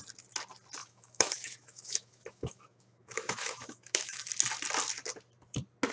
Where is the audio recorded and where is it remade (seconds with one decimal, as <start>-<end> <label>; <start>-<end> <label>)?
0.0-0.8 recorded; 0.8-4.3 remade; 4.3-5.9 recorded